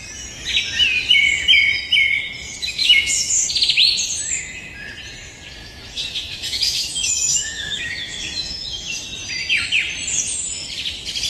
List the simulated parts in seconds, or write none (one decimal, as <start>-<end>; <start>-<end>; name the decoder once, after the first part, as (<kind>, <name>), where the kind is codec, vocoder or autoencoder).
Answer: 2.8-3.5 (autoencoder, DAC-VAE); 5.6-8.9